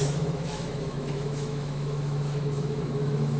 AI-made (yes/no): yes